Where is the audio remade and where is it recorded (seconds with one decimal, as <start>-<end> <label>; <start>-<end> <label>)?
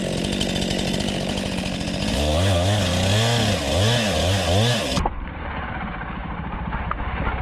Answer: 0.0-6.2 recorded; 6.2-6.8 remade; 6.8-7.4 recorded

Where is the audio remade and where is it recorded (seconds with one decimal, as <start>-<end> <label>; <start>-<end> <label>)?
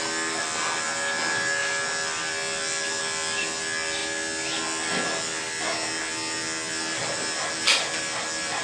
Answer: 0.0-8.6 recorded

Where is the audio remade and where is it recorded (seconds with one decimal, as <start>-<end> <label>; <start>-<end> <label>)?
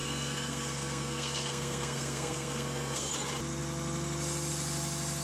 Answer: 0.0-3.1 remade; 3.1-5.2 recorded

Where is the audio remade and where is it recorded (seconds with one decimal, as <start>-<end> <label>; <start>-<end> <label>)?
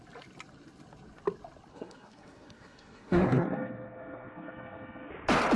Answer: 0.0-1.7 recorded; 1.7-5.1 remade; 5.1-5.6 recorded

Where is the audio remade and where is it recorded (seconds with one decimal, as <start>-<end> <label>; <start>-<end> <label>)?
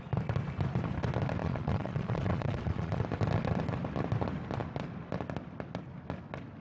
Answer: 0.0-1.4 recorded; 1.4-3.0 remade; 3.0-6.6 recorded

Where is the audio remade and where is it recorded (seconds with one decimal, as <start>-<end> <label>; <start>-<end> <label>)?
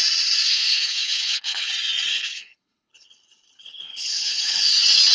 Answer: 0.0-0.5 recorded; 0.5-1.7 remade; 1.7-2.1 recorded; 2.1-4.6 remade; 4.6-5.1 recorded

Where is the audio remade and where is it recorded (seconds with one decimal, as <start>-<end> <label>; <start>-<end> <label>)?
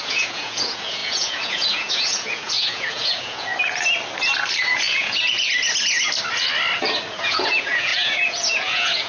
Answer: 0.0-3.5 remade; 3.5-4.6 recorded; 4.6-5.5 remade; 5.5-7.2 recorded; 7.2-9.1 remade